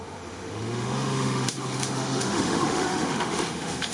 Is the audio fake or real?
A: fake